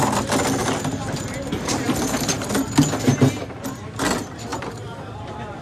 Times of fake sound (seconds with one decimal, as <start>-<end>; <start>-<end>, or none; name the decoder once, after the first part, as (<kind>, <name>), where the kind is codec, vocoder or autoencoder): 0.6-2.5 (vocoder, BigVGAN v2); 4.5-5.6